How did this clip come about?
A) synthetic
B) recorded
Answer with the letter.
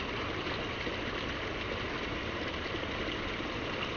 B